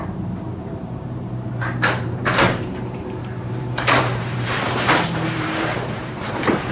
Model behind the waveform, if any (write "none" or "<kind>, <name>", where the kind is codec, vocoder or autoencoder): vocoder, BigVGAN v2